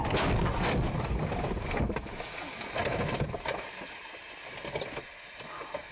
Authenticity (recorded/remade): recorded